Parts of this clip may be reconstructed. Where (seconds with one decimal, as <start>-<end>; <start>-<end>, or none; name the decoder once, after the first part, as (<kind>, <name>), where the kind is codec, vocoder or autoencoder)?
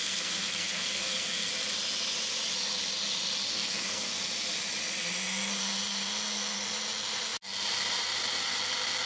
0.0-1.5 (codec, SNAC); 3.5-4.1